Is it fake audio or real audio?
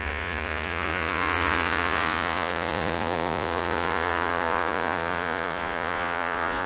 fake